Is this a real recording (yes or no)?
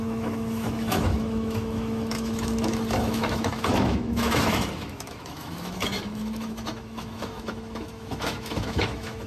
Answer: no